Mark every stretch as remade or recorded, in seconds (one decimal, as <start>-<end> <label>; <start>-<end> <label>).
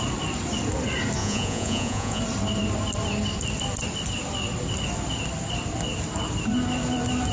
0.0-1.2 recorded; 1.2-2.2 remade; 2.2-7.3 recorded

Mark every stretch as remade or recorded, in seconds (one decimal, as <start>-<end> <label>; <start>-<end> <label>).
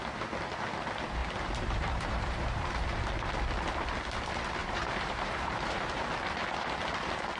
0.0-1.2 recorded; 1.2-2.7 remade; 2.7-4.6 recorded; 4.6-6.0 remade; 6.0-7.4 recorded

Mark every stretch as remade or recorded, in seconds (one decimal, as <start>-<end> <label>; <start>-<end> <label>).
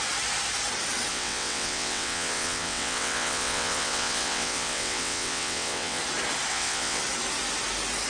0.0-1.1 recorded; 1.1-6.0 remade; 6.0-6.5 recorded; 6.5-7.0 remade; 7.0-8.1 recorded